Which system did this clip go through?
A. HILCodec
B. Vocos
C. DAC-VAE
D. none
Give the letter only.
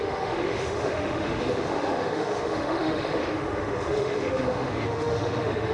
C